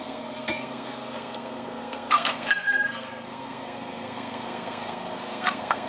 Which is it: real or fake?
fake